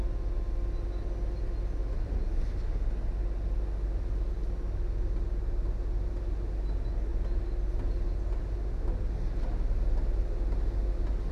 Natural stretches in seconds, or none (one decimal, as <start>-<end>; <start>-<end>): 0.0-11.3